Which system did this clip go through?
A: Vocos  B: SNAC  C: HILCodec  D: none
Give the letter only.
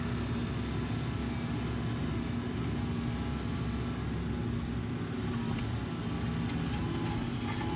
D